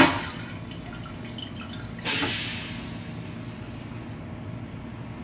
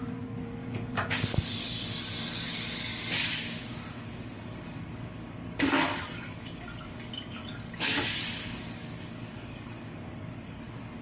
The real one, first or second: first